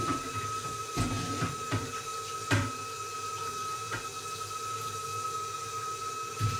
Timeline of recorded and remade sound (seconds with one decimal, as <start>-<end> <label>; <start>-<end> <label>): 0.0-6.6 recorded